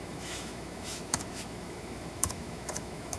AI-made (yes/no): yes